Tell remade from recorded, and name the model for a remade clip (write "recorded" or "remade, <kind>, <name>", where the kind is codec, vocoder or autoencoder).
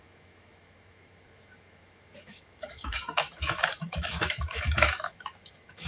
remade, autoencoder, DAC-VAE